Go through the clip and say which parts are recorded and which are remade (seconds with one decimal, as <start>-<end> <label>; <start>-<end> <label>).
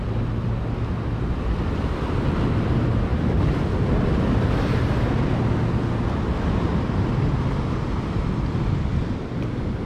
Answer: 0.0-9.9 recorded